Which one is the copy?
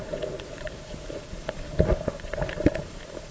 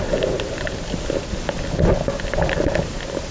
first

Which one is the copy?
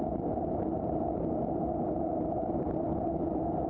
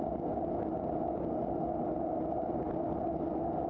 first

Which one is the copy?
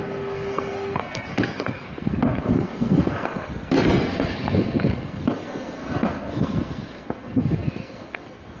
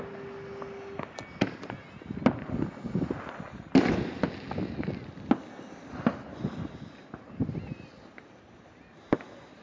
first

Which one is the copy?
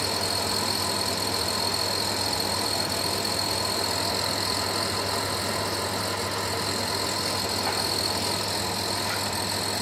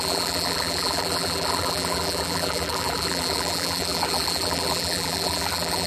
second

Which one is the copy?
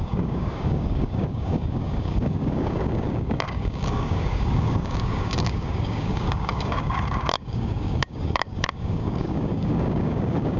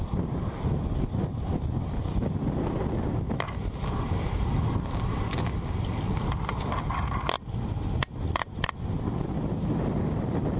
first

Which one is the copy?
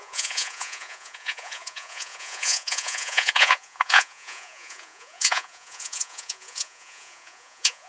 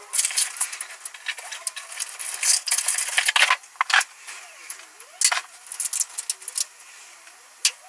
first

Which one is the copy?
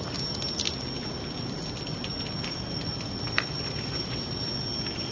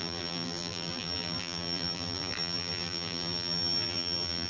second